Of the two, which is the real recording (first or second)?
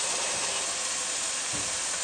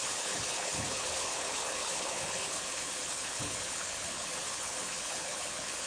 first